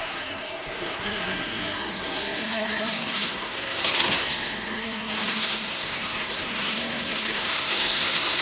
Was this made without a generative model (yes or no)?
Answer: no